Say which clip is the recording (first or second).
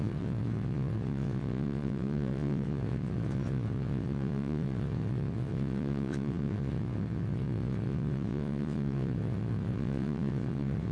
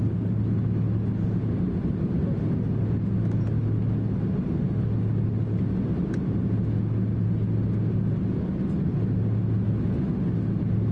second